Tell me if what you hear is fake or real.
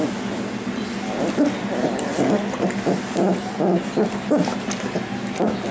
real